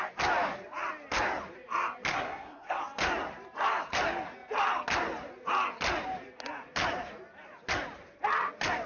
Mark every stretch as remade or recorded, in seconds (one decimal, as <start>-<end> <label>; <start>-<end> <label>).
0.0-2.1 recorded; 2.1-2.8 remade; 2.8-8.9 recorded